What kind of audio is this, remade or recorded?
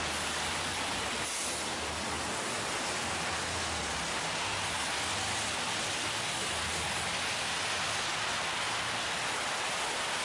recorded